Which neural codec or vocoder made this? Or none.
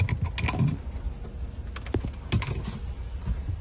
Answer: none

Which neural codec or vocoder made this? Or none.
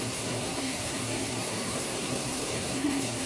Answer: codec, SNAC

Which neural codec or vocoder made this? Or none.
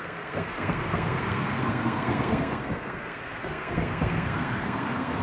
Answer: codec, SNAC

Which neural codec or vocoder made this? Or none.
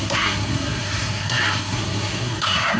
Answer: codec, SNAC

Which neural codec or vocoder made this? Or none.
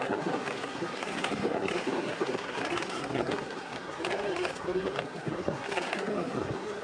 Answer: codec, SNAC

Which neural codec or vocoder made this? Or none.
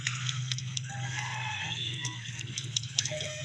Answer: codec, SNAC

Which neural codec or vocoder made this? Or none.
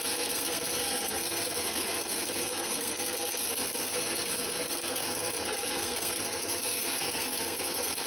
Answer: codec, SNAC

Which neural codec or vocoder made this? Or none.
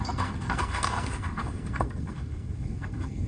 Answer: codec, SNAC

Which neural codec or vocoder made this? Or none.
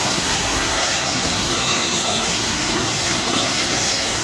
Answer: codec, SNAC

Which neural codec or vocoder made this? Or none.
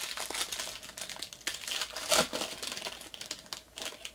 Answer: none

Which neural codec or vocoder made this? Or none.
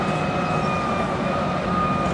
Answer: none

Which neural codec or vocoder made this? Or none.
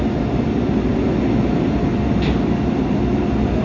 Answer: none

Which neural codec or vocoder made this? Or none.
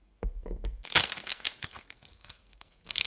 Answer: codec, SNAC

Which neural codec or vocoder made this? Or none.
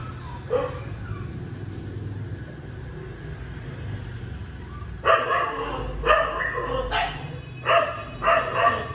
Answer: none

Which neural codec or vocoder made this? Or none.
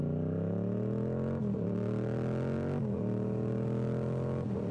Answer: none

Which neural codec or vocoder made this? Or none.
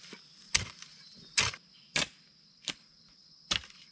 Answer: none